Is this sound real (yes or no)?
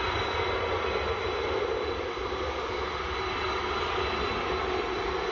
yes